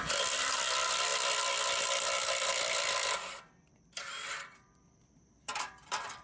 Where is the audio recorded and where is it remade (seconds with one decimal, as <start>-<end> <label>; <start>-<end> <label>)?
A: 0.0-1.1 remade; 1.1-2.5 recorded; 2.5-6.2 remade